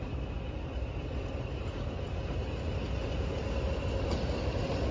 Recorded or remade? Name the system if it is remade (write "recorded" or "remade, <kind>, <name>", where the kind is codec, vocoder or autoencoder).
recorded